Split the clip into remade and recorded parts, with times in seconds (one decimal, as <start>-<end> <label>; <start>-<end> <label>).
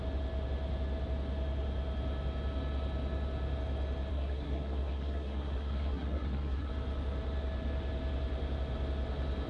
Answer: 0.0-4.1 recorded; 4.1-6.7 remade; 6.7-9.5 recorded